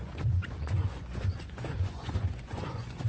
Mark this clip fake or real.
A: fake